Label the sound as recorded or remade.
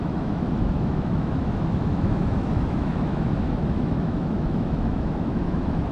remade